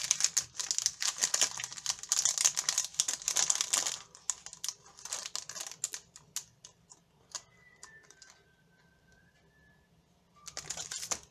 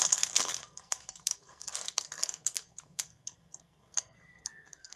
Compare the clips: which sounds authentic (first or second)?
first